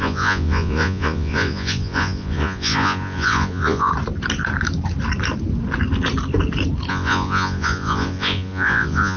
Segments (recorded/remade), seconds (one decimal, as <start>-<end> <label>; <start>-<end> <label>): 0.0-3.9 remade; 3.9-6.9 recorded; 6.9-9.2 remade